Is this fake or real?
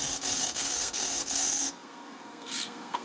fake